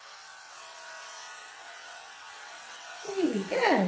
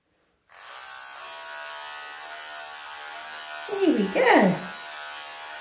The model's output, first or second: first